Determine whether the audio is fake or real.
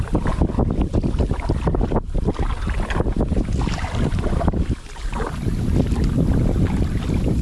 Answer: real